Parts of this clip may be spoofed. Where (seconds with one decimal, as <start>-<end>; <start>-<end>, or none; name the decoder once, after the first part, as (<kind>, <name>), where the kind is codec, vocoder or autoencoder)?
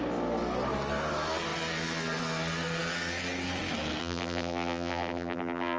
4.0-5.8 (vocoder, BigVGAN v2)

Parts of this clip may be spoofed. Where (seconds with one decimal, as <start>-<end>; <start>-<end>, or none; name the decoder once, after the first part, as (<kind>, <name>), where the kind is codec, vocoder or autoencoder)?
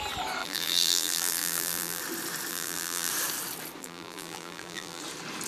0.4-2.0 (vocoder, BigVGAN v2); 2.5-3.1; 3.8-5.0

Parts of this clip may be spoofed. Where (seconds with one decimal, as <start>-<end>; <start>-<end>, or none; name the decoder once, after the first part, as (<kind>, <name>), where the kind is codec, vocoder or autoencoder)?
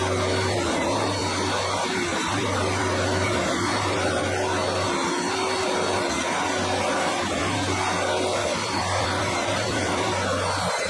2.1-4.2 (vocoder, BigVGAN v2); 8.3-10.1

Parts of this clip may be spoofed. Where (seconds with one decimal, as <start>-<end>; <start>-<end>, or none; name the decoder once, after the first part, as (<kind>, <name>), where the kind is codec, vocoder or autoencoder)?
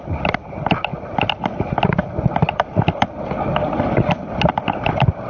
0.0-0.9 (vocoder, BigVGAN v2); 4.1-5.3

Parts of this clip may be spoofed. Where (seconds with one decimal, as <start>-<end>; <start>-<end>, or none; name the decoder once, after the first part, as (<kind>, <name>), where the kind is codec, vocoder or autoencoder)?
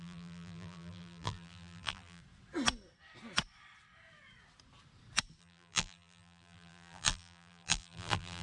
0.0-2.2 (vocoder, BigVGAN v2); 5.4-8.4